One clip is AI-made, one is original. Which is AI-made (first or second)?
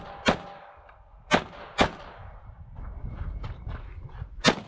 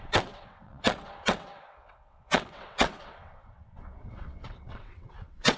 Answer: second